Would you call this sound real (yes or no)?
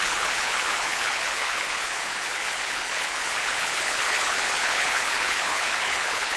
no